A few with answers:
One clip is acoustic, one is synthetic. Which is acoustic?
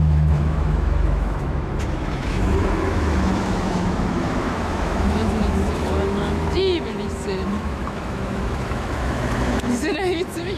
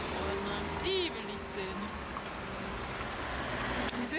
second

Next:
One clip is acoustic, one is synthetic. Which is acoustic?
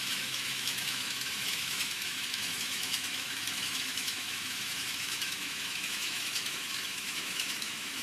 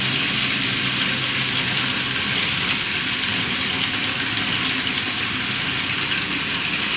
second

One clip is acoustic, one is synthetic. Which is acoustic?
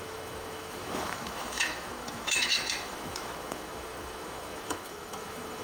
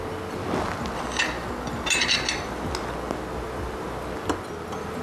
second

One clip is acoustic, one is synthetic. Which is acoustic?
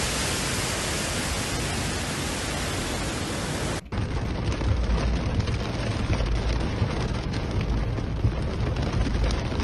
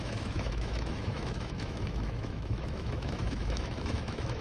first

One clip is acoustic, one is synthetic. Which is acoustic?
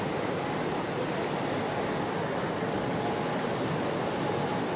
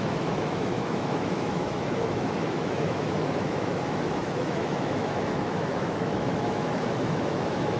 first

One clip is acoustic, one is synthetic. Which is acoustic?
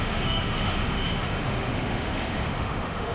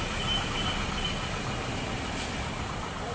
second